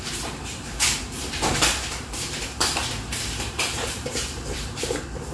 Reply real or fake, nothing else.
fake